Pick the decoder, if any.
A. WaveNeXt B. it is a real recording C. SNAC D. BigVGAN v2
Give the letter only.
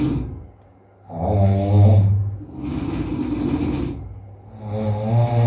B